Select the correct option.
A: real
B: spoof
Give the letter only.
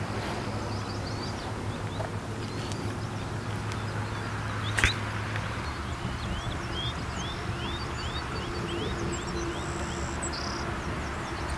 A